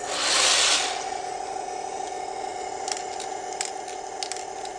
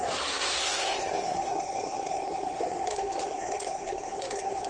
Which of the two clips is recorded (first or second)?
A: first